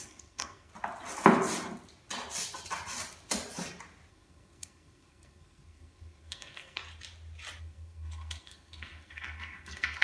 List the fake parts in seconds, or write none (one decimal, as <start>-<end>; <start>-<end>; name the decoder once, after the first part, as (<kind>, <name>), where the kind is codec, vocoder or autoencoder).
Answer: 0.0-0.7 (codec, SNAC); 4.1-6.8; 7.6-10.0